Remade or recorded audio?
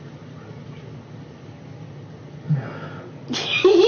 recorded